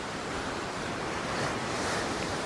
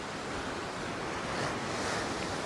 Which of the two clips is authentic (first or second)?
second